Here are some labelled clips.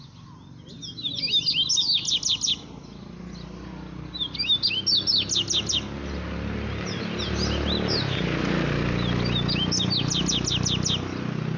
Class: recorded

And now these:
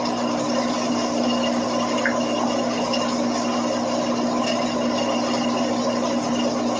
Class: recorded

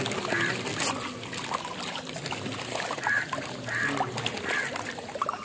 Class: recorded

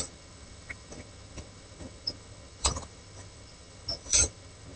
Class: remade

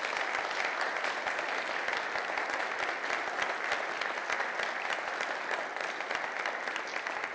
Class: recorded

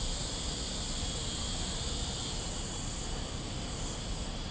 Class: recorded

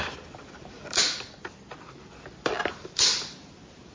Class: recorded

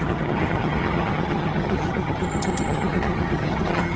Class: remade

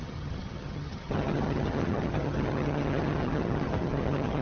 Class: remade